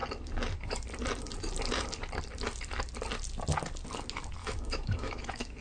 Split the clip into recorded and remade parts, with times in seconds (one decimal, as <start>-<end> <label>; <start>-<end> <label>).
0.0-4.4 recorded; 4.4-5.6 remade